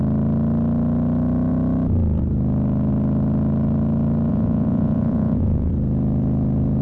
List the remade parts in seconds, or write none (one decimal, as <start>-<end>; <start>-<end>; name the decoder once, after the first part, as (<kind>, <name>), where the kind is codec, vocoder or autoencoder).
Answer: 4.3-5.7 (vocoder, Vocos)